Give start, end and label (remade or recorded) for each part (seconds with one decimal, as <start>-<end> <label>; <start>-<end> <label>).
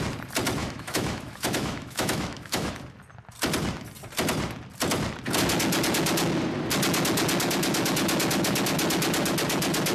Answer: 0.0-0.6 recorded; 0.6-2.7 remade; 2.7-9.9 recorded